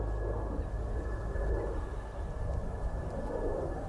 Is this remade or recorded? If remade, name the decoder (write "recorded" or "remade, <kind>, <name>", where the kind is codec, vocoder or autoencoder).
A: recorded